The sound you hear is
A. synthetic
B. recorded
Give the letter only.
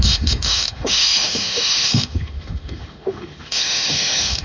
A